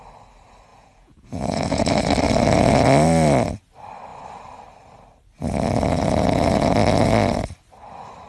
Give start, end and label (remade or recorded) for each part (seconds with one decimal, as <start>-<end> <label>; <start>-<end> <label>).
0.0-0.7 recorded; 0.7-1.9 remade; 1.9-8.3 recorded